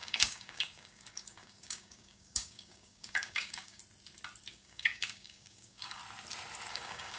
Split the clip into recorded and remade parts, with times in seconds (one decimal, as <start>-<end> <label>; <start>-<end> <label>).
0.0-3.8 remade; 3.8-4.5 recorded; 4.5-6.0 remade; 6.0-6.7 recorded; 6.7-7.2 remade